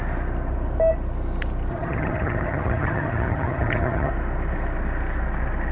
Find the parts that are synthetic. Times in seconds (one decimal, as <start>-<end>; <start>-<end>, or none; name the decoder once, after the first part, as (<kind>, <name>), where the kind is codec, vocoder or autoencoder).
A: 1.7-4.1 (vocoder, HiFi-GAN)